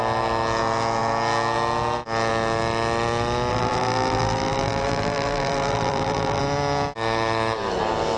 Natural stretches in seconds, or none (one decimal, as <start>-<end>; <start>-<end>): 0.0-3.5; 6.4-8.2